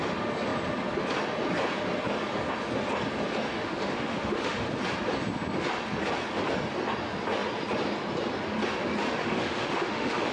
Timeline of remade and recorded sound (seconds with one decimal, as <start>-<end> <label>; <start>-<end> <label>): 0.0-3.6 recorded; 3.6-4.7 remade; 4.7-9.2 recorded; 9.2-10.3 remade